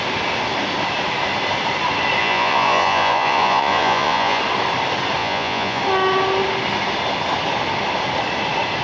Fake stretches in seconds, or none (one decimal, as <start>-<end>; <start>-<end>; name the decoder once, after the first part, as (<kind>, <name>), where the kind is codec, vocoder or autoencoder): 2.2-4.4 (vocoder, Vocos); 5.2-5.8